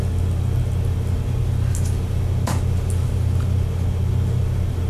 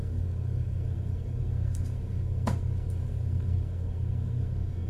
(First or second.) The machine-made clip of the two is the second